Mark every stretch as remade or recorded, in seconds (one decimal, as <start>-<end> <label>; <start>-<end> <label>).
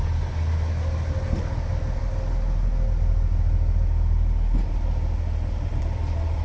0.0-6.4 recorded